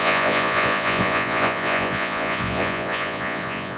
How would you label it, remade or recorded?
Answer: remade